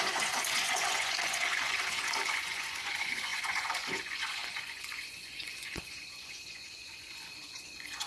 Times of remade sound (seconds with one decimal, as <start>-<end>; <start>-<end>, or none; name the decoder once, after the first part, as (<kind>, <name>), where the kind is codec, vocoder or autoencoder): 0.0-8.1 (vocoder, Vocos)

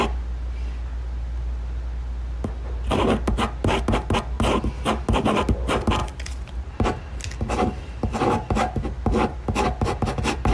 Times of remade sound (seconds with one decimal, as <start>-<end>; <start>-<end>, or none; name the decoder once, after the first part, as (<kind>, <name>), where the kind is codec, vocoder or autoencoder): none

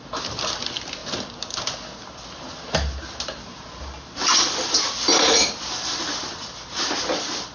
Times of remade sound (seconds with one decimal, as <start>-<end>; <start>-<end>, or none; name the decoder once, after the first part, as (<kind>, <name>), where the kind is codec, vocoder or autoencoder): none